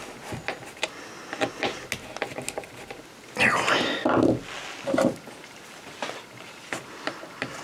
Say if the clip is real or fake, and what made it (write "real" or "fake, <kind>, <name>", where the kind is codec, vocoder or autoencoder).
real